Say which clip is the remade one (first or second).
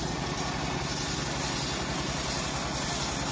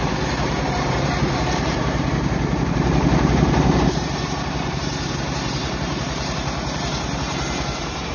second